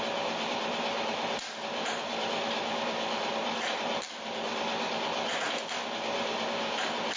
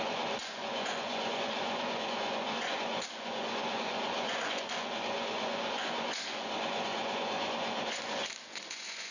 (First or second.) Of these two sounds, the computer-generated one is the second